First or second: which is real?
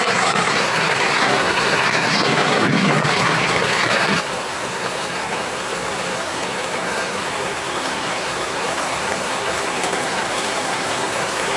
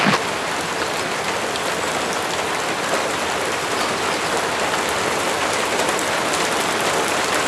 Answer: second